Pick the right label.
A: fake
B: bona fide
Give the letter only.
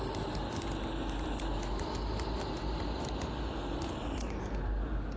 B